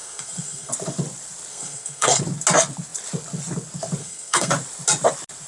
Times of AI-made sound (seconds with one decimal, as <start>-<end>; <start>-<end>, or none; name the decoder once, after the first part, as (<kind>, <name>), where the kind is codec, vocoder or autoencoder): 0.0-0.7 (codec, SNAC); 1.5-2.2; 4.0-4.5